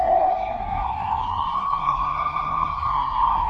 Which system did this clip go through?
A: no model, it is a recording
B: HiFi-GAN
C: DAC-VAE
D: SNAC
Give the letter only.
D